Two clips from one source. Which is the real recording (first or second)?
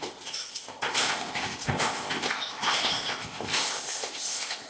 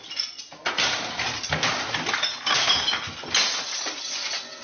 second